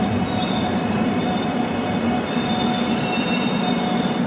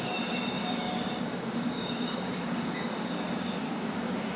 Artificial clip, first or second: second